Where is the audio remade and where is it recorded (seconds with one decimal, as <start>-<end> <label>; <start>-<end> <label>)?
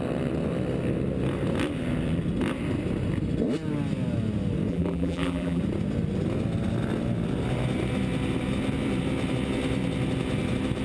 0.0-4.7 recorded; 4.7-5.6 remade; 5.6-10.8 recorded